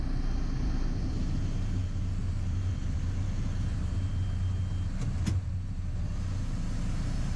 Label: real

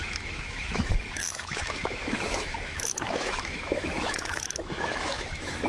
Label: fake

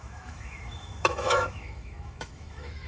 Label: fake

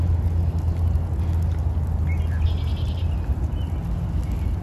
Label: real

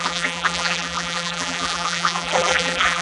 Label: fake